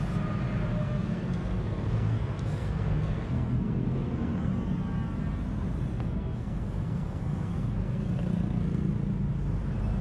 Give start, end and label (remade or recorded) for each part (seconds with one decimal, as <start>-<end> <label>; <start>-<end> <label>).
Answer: 0.0-0.8 recorded; 0.8-4.5 remade; 4.5-5.9 recorded; 5.9-8.9 remade; 8.9-10.0 recorded